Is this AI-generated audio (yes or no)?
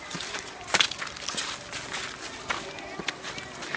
no